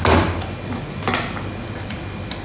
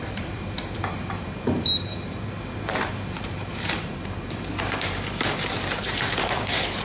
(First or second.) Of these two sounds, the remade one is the second